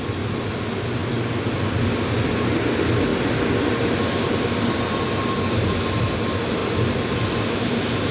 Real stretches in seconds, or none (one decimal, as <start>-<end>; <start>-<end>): 0.0-8.1